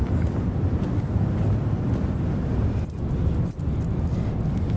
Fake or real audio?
real